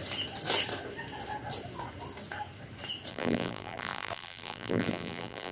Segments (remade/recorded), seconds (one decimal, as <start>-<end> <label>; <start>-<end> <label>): 0.0-3.1 recorded; 3.1-5.5 remade